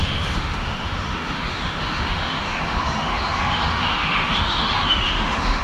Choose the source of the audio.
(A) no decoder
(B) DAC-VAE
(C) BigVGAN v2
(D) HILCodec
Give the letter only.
B